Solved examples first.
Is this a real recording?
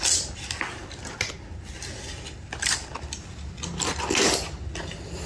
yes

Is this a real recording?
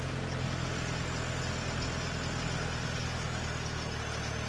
yes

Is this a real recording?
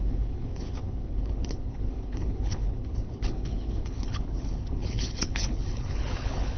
no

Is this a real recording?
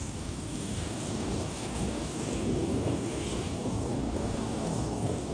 no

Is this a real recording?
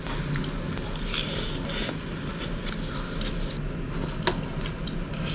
yes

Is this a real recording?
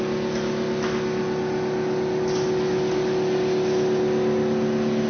yes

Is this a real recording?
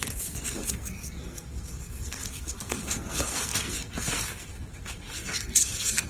no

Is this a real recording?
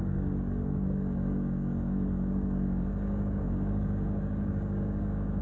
no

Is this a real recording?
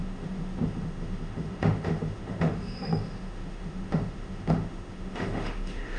no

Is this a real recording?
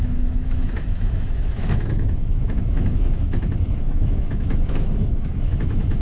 no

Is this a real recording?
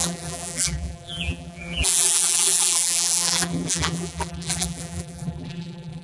no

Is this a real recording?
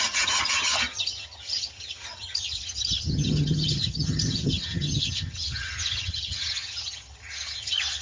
no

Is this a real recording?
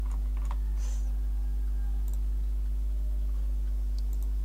yes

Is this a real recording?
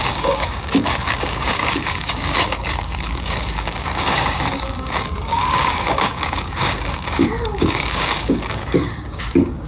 no